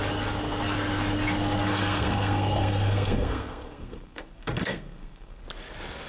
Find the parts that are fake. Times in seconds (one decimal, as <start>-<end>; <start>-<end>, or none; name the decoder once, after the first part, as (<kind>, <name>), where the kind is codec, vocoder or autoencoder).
1.7-5.4 (codec, SNAC)